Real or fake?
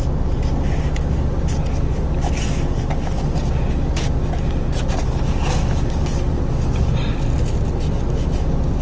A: real